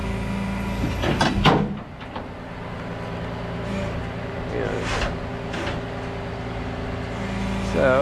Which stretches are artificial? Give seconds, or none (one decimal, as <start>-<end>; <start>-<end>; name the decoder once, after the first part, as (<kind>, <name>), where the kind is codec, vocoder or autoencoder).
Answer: none